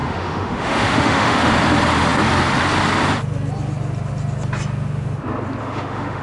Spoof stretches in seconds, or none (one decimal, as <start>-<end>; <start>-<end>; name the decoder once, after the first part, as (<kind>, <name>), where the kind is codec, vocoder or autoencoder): 0.0-1.5 (autoencoder, DAC-VAE); 5.6-6.2